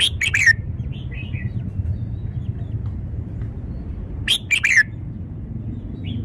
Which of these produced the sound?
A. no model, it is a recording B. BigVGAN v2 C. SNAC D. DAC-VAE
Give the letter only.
A